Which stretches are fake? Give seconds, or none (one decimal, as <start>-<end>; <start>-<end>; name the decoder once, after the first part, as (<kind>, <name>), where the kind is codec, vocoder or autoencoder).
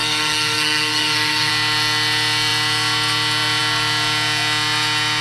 0.0-1.5 (codec, SNAC)